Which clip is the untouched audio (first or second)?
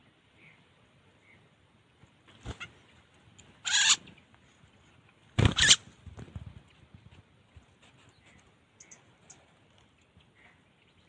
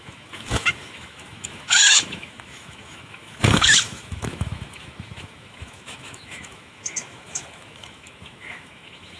first